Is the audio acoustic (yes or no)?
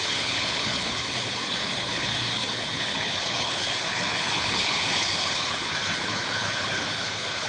no